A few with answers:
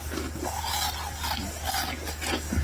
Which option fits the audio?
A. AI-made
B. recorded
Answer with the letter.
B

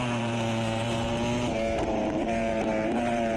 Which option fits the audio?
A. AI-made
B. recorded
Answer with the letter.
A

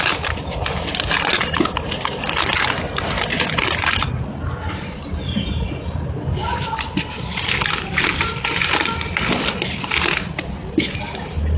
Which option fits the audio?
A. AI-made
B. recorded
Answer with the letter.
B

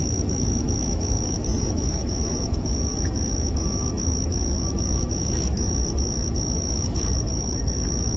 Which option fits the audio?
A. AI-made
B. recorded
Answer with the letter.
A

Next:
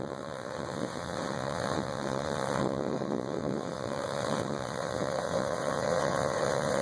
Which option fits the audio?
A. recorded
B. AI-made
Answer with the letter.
B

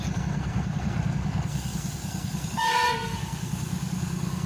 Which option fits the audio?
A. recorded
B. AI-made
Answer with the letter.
B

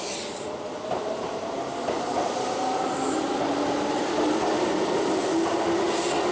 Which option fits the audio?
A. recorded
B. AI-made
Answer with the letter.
A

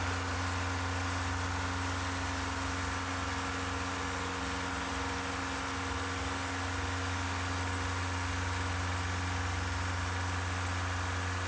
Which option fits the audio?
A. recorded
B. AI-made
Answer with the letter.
A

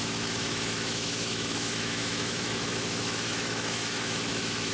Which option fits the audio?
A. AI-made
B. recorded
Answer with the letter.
A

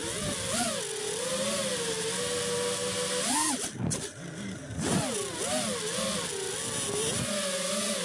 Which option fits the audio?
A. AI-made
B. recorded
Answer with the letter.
B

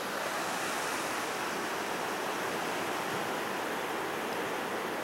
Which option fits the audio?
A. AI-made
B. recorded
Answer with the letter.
B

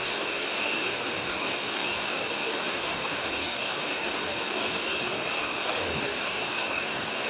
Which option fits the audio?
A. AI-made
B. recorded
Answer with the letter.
A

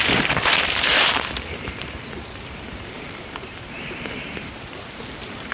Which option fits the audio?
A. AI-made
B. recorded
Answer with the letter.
A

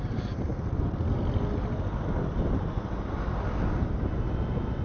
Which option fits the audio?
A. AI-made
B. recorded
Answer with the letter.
B